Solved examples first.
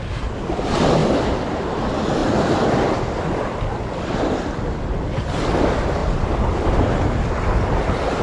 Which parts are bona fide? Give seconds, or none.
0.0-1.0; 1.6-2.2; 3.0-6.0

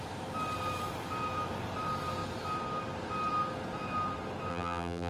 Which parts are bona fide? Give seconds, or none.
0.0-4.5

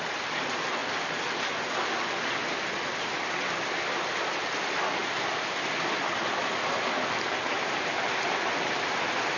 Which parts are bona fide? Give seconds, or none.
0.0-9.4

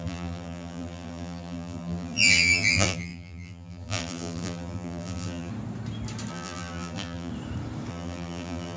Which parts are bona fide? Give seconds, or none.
5.5-6.3; 7.3-7.9

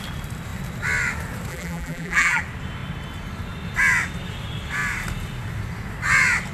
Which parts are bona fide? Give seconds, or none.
0.0-1.5; 2.4-6.5

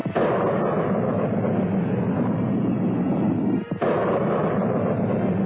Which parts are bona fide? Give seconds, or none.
0.0-5.5

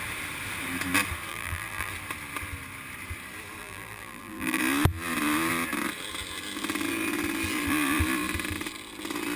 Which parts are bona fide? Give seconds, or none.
0.0-1.3; 1.9-3.6; 4.6-9.4

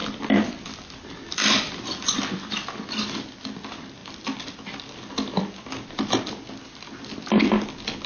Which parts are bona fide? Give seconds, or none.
2.2-8.1